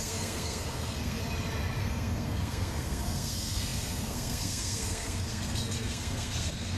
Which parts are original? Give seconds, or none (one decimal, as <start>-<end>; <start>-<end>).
1.2-1.8